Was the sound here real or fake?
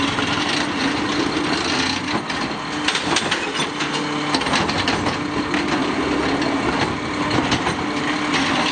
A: real